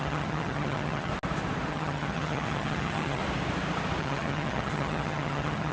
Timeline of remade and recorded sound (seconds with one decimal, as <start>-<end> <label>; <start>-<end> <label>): 0.0-1.1 remade; 1.1-1.7 recorded; 1.7-3.2 remade; 3.2-4.0 recorded; 4.0-5.7 remade